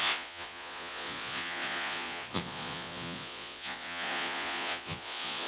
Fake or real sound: fake